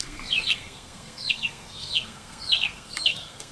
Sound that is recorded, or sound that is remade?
remade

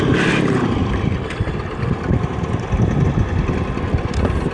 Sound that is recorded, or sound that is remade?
recorded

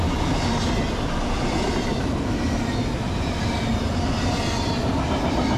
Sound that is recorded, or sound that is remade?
recorded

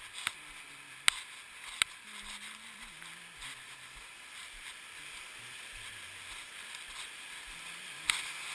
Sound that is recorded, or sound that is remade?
recorded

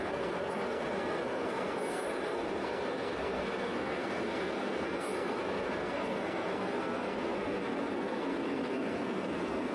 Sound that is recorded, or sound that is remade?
remade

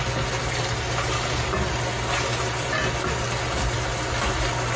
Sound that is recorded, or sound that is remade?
recorded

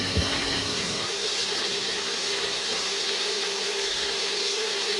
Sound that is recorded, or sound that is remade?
remade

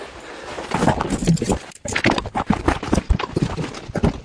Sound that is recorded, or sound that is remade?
recorded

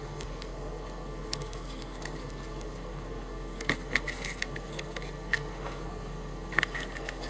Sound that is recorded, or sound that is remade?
remade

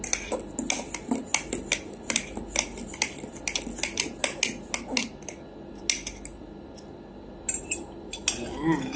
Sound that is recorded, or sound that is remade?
recorded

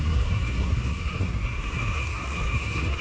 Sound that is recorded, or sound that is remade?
remade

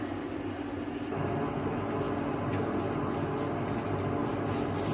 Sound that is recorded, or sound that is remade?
recorded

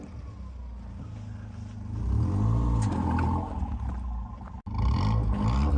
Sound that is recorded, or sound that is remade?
recorded